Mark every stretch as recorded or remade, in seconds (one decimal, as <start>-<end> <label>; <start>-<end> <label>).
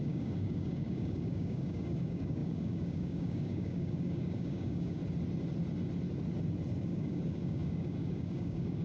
0.0-5.0 remade; 5.0-6.8 recorded; 6.8-8.8 remade